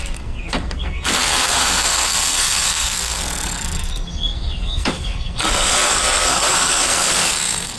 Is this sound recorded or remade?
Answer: remade